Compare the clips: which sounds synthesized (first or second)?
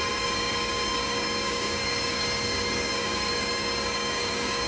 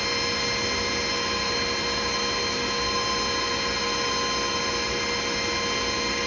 first